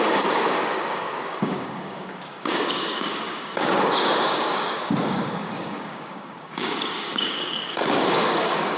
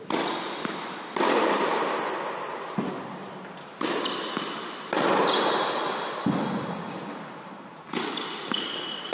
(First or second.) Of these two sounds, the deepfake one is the first